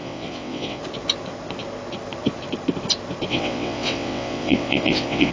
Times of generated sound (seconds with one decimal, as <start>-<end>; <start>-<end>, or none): 0.0-0.8; 3.3-5.3